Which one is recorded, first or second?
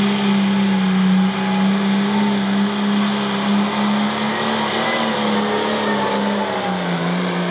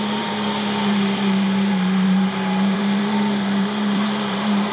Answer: first